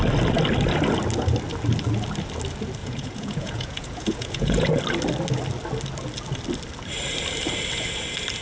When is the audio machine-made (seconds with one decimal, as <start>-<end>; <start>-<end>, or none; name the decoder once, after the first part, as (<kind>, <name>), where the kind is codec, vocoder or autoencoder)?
2.8-4.8 (vocoder, Vocos)